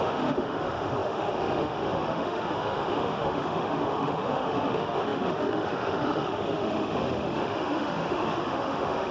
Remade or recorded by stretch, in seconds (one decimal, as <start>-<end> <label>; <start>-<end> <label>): 0.0-9.1 remade